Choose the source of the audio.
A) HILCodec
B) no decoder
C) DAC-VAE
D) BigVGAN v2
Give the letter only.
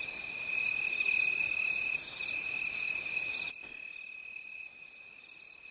B